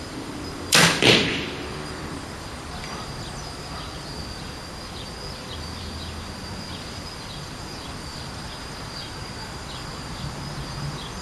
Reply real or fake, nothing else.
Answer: fake